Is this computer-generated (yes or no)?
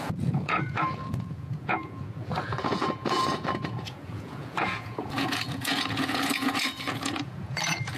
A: yes